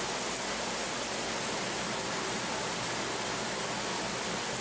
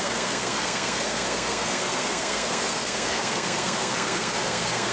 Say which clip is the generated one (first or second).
second